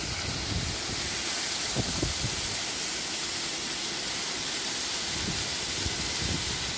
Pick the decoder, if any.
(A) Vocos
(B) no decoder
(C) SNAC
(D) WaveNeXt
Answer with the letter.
B